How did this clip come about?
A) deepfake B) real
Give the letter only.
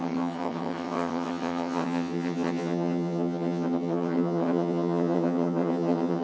A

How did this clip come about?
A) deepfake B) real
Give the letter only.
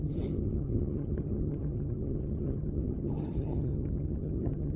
A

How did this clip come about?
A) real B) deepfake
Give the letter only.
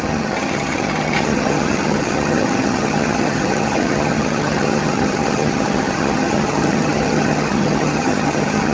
B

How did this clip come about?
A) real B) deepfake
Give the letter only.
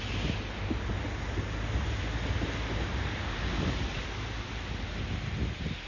A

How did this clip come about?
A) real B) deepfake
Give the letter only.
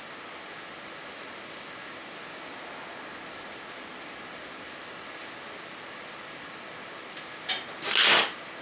A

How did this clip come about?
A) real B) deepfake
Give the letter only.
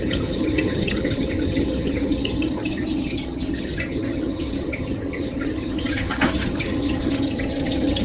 B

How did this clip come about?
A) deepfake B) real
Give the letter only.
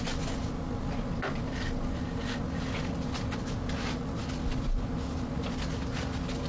B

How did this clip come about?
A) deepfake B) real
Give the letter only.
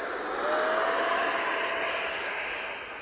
B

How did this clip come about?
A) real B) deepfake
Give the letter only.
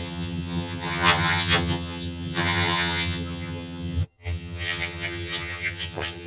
B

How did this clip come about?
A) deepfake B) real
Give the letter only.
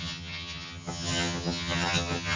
A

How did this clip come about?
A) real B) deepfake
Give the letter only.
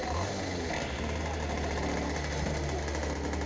A